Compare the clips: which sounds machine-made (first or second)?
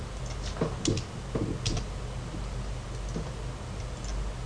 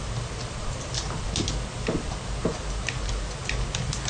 second